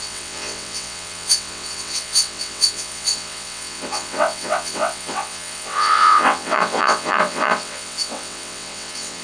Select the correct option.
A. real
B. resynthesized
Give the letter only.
B